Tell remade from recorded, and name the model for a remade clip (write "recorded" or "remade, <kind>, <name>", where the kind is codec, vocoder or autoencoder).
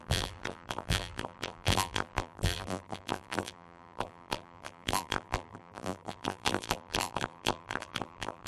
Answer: remade, vocoder, BigVGAN v2